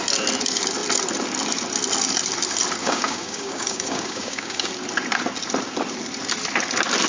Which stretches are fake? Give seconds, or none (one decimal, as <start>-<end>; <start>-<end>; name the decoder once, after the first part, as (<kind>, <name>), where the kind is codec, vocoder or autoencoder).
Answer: 2.8-4.7 (codec, DAC)